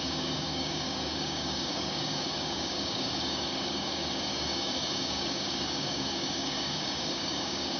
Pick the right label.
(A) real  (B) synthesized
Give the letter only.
B